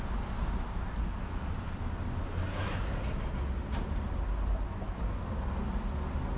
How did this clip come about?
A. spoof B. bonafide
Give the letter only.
B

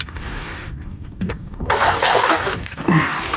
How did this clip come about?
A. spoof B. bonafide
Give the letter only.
A